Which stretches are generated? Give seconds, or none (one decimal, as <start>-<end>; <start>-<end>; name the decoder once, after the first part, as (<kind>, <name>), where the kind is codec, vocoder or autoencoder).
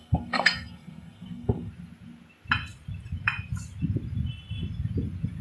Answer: 0.0-1.7 (codec, SNAC)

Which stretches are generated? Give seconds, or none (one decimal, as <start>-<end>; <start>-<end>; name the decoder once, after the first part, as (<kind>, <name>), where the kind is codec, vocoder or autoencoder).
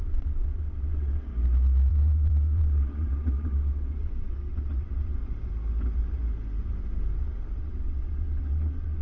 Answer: 0.0-1.3 (vocoder, WaveNeXt); 1.9-5.2; 7.5-9.0